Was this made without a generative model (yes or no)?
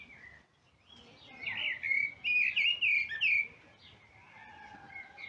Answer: yes